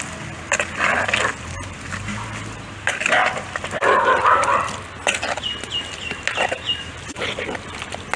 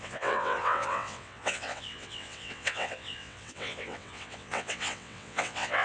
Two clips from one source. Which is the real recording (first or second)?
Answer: first